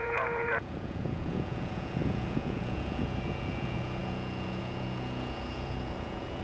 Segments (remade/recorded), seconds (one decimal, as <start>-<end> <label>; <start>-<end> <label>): 0.0-6.4 remade